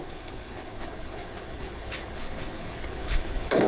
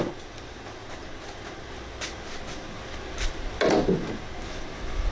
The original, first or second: second